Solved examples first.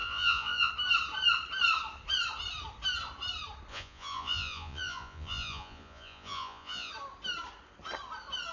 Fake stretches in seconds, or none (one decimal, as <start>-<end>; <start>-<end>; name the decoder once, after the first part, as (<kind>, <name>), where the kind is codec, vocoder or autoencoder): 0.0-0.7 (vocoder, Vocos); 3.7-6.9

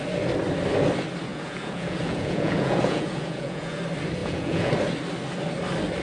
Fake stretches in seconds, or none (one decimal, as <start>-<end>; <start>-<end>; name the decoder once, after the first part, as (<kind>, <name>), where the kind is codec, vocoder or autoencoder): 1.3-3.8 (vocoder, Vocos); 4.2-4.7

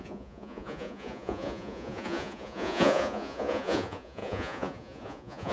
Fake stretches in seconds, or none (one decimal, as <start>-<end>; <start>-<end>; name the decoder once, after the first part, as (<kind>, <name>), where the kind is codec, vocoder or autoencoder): 0.0-5.5 (vocoder, Vocos)